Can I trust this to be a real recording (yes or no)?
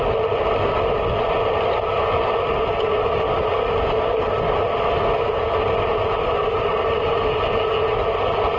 yes